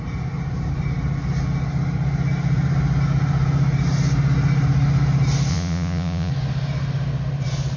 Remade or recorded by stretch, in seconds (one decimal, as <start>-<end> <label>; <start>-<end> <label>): 0.0-5.5 recorded; 5.5-6.3 remade; 6.3-7.8 recorded